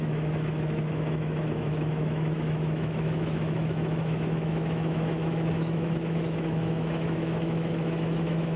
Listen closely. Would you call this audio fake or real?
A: fake